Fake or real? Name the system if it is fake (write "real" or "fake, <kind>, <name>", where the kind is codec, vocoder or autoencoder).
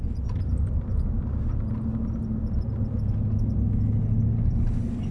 real